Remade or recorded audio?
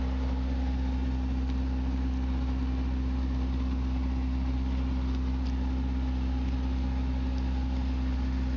recorded